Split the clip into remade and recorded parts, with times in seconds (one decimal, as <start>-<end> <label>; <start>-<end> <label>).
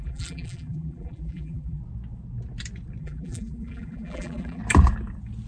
0.0-1.8 remade; 1.8-3.0 recorded; 3.0-4.6 remade; 4.6-5.5 recorded